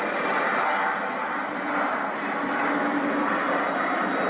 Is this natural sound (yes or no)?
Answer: yes